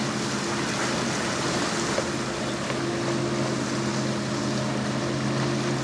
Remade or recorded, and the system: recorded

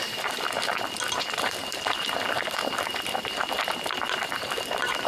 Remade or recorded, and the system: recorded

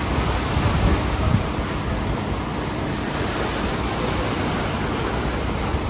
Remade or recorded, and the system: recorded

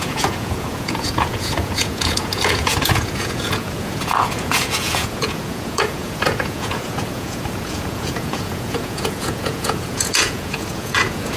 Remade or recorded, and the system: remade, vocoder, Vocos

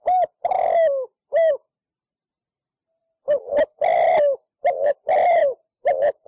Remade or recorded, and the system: recorded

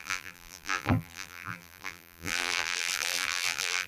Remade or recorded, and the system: remade, vocoder, BigVGAN v2